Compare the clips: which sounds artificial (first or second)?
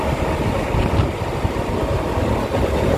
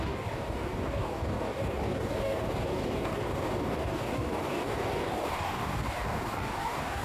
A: second